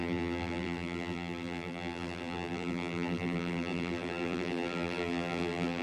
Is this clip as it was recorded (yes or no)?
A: no